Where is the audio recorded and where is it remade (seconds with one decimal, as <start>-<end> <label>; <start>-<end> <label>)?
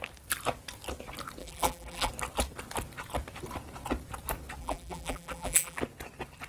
0.0-1.4 recorded; 1.4-2.1 remade; 2.1-4.6 recorded; 4.6-5.8 remade; 5.8-6.5 recorded